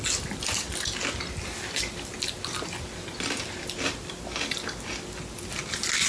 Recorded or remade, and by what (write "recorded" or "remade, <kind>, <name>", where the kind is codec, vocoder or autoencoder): recorded